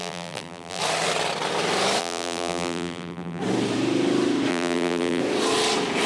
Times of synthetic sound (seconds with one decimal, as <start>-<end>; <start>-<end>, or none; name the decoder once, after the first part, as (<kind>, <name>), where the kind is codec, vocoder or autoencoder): 0.0-0.8 (vocoder, BigVGAN v2); 2.0-3.4; 4.5-5.2

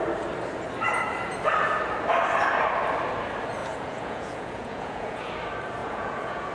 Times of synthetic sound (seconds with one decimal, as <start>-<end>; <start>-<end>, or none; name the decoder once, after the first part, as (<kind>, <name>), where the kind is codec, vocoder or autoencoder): 3.6-5.3 (vocoder, Vocos); 5.8-6.5